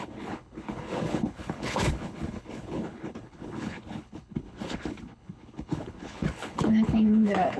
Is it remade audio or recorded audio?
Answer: remade